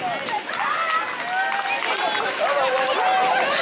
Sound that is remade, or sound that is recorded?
recorded